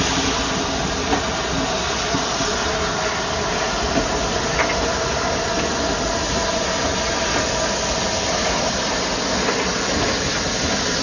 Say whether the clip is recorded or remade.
recorded